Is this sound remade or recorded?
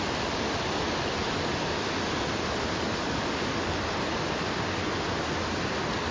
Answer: recorded